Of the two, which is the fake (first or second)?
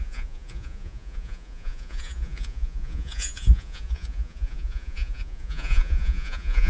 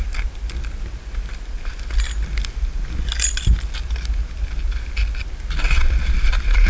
first